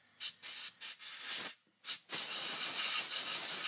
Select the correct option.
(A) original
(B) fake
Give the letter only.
A